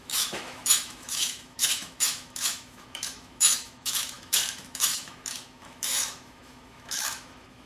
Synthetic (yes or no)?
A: yes